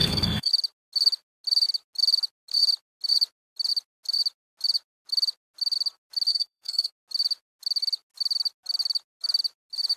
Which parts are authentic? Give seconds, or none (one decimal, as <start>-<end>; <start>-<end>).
0.5-6.3; 6.9-10.0